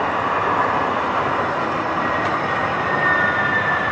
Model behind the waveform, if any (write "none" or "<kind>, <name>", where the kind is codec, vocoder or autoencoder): none